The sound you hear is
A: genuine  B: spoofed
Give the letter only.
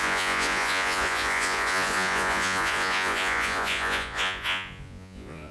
B